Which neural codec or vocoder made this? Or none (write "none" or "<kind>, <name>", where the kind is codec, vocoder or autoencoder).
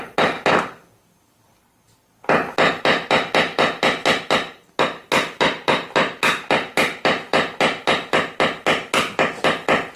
none